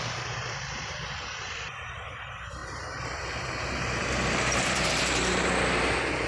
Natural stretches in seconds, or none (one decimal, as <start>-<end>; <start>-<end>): none